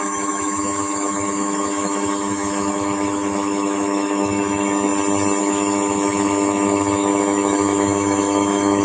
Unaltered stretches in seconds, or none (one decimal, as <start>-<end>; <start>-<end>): 4.9-5.4

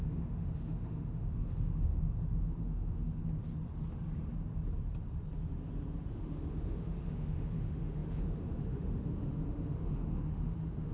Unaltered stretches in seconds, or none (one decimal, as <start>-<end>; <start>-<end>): 3.2-6.1